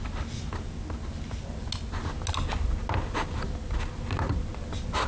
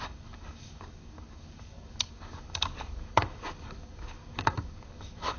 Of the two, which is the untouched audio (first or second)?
first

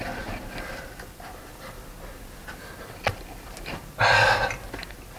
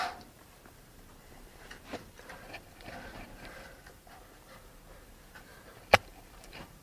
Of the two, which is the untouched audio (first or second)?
first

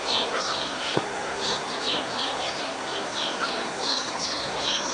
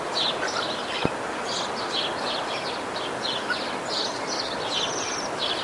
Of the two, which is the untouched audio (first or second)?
second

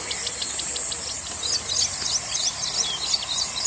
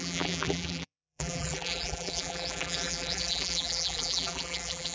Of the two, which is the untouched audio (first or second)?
first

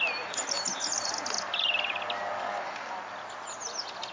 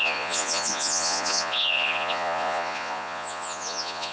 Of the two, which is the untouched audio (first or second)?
first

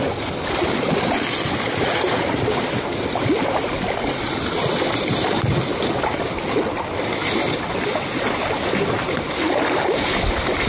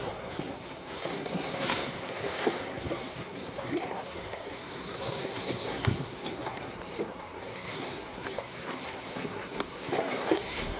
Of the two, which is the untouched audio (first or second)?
first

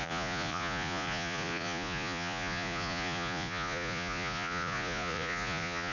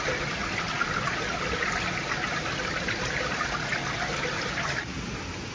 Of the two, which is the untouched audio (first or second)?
second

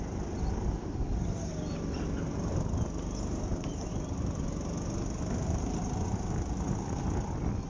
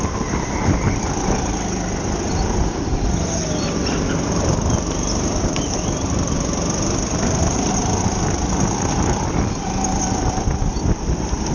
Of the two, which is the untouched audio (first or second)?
first